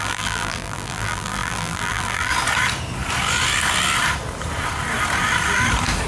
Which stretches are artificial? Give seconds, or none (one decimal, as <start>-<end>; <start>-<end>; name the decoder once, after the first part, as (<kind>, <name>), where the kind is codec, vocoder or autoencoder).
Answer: 0.0-2.3 (vocoder, BigVGAN v2)